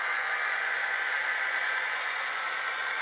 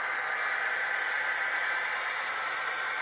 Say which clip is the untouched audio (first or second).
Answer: second